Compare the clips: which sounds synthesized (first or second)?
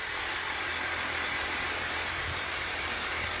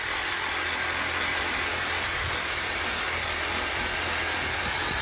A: first